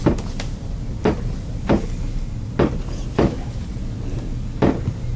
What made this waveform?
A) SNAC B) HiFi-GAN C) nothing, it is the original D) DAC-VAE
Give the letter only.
C